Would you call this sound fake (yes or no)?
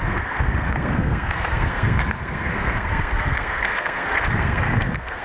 yes